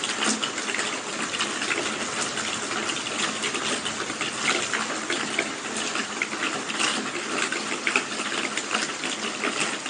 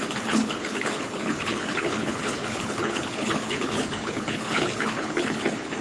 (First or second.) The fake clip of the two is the second